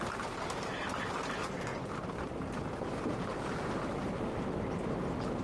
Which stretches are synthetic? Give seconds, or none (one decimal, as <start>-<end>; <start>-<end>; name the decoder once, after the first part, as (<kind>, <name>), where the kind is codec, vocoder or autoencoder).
none